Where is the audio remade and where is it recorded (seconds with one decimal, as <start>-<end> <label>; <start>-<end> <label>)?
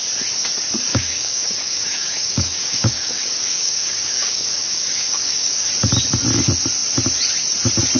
0.0-0.9 recorded; 0.9-5.7 remade; 5.7-8.0 recorded